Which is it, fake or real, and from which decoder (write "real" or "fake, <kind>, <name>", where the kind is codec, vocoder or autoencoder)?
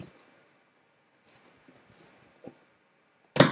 real